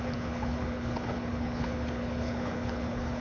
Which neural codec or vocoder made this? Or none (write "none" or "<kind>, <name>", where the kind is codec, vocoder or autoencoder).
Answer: codec, HILCodec